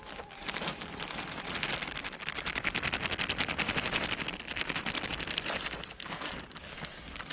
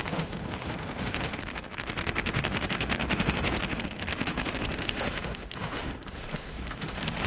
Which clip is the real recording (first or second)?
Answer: first